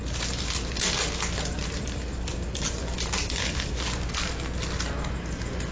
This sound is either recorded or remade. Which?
recorded